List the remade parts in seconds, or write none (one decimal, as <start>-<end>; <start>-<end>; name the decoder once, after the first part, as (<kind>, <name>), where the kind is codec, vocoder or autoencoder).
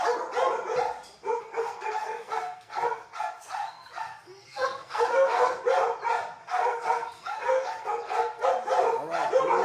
1.2-5.6 (codec, SNAC); 6.4-8.5